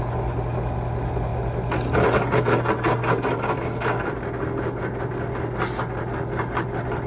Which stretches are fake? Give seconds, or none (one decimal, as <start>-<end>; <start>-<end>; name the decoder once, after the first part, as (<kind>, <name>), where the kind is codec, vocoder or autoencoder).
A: none

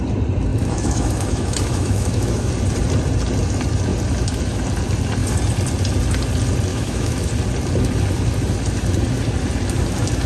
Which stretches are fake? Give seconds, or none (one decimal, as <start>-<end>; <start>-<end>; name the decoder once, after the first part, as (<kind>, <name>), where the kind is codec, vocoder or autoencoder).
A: 0.5-2.5 (autoencoder, DAC-VAE); 6.7-7.3

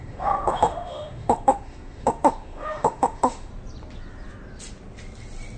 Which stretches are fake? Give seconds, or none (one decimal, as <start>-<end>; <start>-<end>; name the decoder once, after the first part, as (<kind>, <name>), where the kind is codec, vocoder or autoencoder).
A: 0.0-3.5 (autoencoder, DAC-VAE)

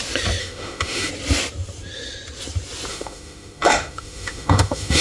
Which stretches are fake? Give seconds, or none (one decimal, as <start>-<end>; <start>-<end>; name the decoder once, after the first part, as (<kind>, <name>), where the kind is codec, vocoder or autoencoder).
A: 0.4-1.1 (autoencoder, DAC-VAE); 2.9-5.0